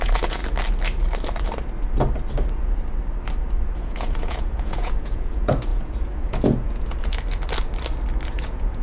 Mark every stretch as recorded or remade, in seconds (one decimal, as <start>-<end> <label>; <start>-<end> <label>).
0.0-0.4 remade; 0.4-3.8 recorded; 3.8-7.1 remade; 7.1-8.3 recorded; 8.3-8.8 remade